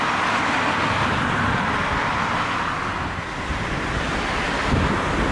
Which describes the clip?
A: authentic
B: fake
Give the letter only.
A